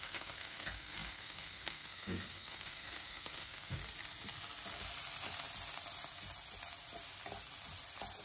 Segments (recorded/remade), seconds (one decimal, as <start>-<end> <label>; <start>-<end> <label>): 0.0-3.8 remade; 3.8-8.2 recorded